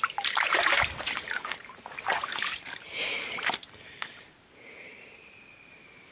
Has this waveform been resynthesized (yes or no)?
yes